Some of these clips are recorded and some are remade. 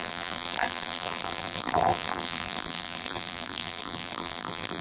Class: remade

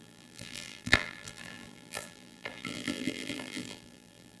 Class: remade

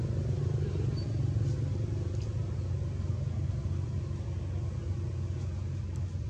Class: recorded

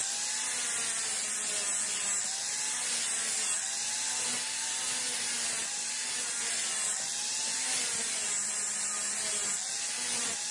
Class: recorded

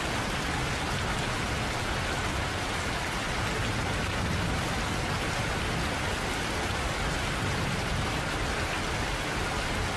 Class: recorded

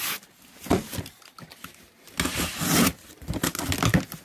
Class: recorded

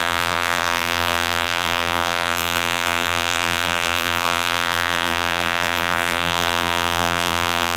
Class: remade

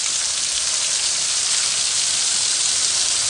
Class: recorded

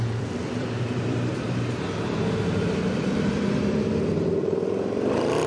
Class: remade